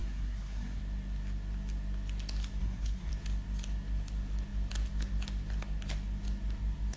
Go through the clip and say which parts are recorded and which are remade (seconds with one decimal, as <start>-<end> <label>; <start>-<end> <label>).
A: 0.0-0.8 remade; 0.8-2.6 recorded; 2.6-3.1 remade; 3.1-7.0 recorded